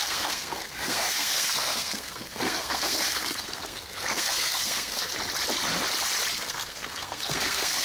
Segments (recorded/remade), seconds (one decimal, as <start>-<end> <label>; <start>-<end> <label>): 0.0-5.1 remade; 5.1-6.3 recorded; 6.3-7.8 remade